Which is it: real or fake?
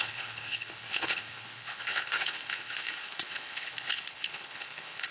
fake